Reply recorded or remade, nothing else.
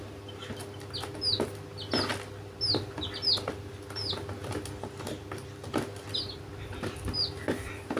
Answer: recorded